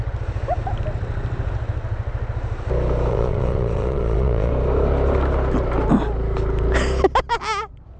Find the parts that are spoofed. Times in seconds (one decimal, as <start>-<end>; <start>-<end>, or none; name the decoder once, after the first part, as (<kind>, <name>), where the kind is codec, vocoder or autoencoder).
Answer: 3.1-4.5 (vocoder, Vocos)